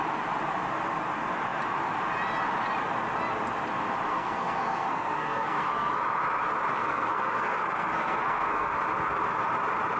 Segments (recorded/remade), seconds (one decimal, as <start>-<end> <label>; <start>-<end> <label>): 0.0-4.1 recorded; 4.1-5.9 remade; 5.9-6.7 recorded; 6.7-8.7 remade; 8.7-10.0 recorded